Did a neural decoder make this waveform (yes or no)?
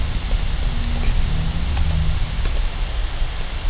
no